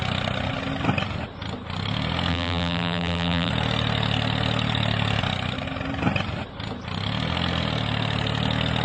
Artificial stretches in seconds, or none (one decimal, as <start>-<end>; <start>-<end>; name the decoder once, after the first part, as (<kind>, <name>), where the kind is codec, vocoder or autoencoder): 2.3-3.5 (vocoder, BigVGAN v2)